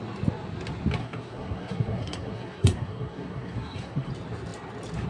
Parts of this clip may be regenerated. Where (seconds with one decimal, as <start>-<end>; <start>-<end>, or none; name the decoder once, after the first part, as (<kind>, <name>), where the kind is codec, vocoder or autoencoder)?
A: 1.0-4.1 (codec, SNAC)